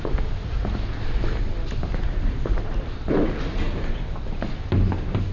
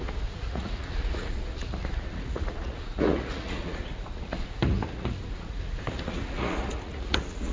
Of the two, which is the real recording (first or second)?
first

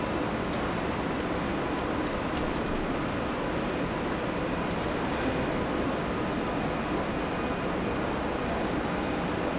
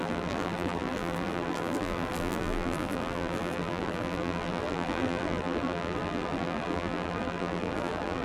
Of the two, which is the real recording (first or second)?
first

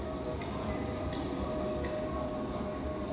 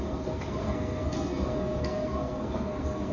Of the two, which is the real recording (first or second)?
first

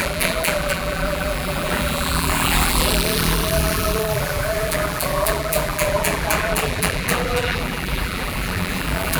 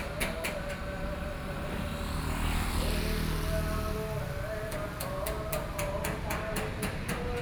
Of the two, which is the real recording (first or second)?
second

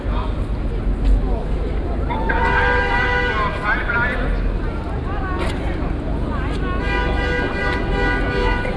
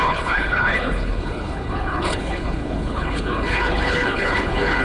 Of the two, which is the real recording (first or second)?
first